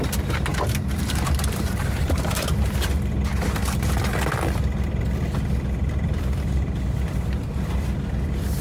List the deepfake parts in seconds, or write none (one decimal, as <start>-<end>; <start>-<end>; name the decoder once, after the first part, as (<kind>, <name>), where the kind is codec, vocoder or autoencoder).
0.5-2.5 (vocoder, BigVGAN v2)